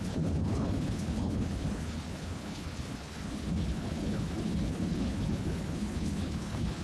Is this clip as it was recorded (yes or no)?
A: no